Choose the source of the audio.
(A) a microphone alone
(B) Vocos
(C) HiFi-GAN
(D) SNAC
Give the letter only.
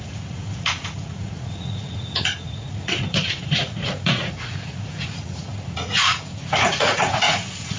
B